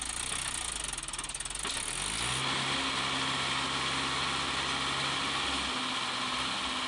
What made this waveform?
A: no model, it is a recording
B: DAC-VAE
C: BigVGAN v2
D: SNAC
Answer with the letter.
A